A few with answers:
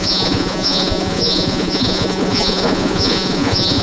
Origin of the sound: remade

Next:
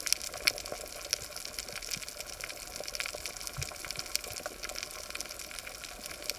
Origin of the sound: recorded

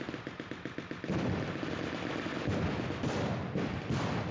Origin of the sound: recorded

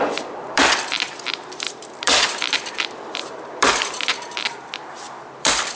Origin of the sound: remade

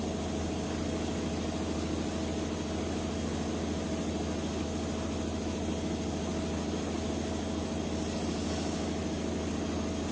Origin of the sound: recorded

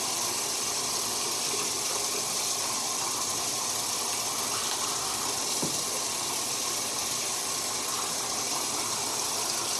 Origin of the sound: remade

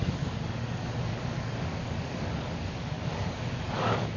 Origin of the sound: remade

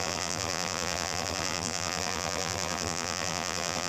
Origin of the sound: remade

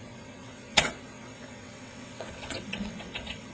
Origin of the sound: remade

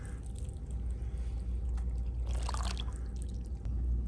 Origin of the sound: recorded